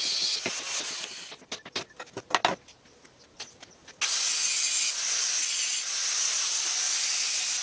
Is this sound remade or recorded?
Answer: recorded